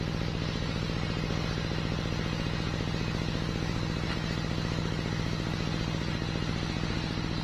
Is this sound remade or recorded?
recorded